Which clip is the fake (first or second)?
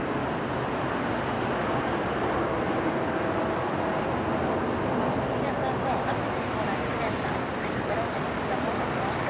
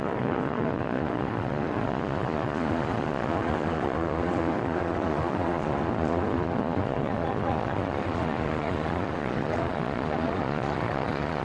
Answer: second